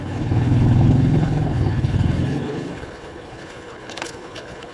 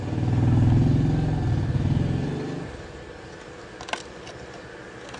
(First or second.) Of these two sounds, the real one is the second